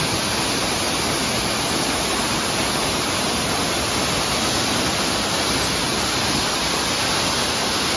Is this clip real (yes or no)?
yes